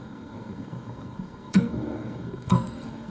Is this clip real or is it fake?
fake